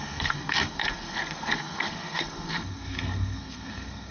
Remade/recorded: remade